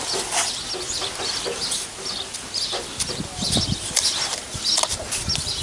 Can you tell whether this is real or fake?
real